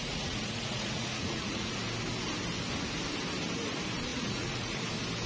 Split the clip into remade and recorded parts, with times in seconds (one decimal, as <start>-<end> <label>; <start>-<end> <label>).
0.0-1.7 remade; 1.7-4.1 recorded; 4.1-4.8 remade; 4.8-5.3 recorded